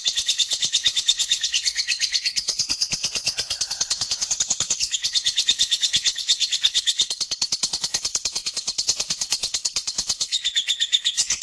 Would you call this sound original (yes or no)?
no